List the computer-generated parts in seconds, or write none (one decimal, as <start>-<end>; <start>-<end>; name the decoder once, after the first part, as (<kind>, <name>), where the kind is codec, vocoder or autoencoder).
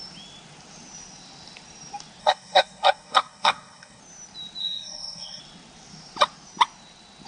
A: 2.2-4.0 (codec, SNAC); 4.6-5.4